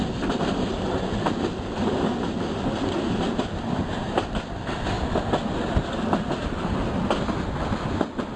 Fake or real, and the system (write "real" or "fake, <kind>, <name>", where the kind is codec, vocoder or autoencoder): real